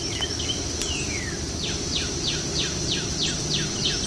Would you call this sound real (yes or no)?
yes